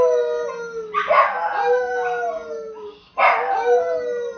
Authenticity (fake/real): real